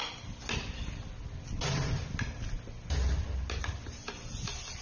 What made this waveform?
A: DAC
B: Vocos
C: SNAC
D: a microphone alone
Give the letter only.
D